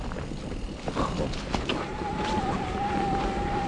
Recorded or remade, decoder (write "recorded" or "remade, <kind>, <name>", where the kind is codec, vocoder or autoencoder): recorded